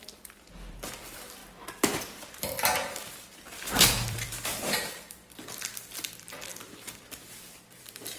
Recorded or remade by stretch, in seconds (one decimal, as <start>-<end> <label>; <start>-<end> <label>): 0.0-1.4 remade; 1.4-2.0 recorded; 2.0-8.2 remade